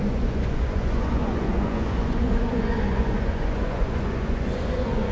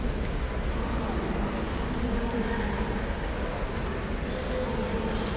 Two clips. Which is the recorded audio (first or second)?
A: second